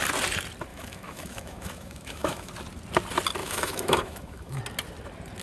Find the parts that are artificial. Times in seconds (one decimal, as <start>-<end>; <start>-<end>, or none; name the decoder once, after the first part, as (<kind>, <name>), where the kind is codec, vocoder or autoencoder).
0.7-2.5 (autoencoder, DAC-VAE); 3.4-4.6